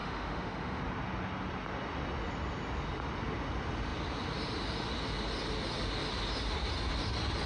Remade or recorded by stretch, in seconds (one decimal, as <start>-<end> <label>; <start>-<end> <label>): 0.0-0.8 remade; 0.8-7.5 recorded